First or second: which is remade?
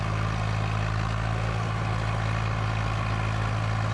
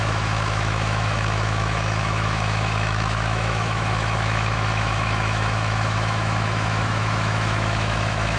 second